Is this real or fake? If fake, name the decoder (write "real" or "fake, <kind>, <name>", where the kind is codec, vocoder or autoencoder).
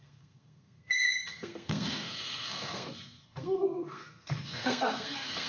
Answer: fake, codec, SNAC